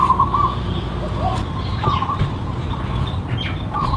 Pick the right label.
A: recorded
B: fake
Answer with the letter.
A